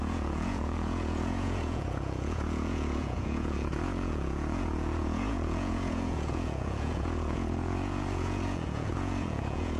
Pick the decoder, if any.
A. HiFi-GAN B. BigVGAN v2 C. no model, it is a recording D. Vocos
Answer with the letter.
D